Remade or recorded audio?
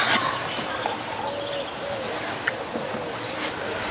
recorded